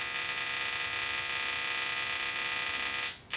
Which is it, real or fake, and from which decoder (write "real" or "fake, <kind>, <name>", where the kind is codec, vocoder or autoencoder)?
real